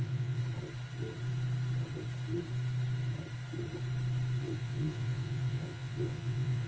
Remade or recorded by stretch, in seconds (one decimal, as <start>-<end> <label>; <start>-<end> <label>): 0.0-0.4 remade; 0.4-4.4 recorded; 4.4-6.7 remade